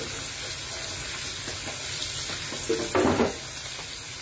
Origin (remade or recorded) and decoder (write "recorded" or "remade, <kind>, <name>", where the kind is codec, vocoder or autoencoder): recorded